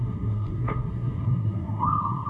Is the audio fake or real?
fake